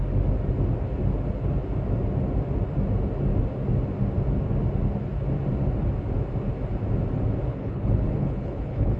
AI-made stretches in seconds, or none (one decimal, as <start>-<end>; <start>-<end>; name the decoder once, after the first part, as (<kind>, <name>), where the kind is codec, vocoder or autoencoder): 7.5-9.0 (codec, HILCodec)